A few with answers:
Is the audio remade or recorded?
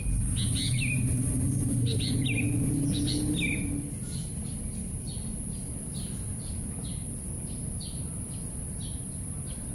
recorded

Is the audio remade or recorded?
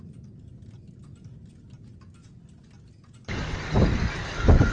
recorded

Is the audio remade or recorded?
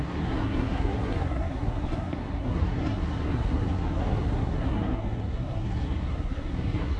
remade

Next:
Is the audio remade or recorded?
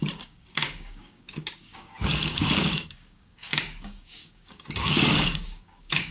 remade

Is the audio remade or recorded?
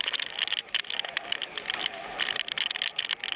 recorded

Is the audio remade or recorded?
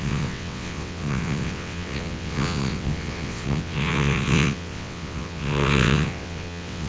remade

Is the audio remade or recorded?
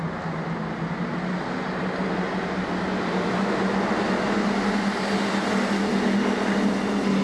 recorded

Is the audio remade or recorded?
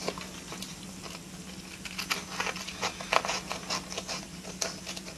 recorded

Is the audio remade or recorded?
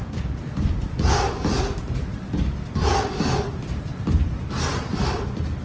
remade